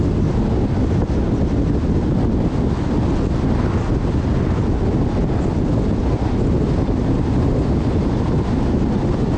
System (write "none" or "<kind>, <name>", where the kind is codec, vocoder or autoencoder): none